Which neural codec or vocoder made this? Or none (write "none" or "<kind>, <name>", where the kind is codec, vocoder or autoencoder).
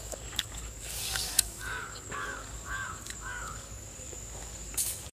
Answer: codec, DAC